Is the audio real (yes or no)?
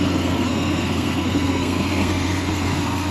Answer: no